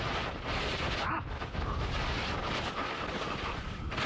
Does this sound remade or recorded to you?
recorded